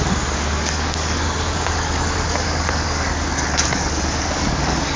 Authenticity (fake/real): fake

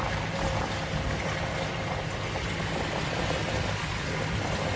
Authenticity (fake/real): real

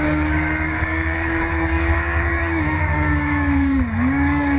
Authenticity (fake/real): fake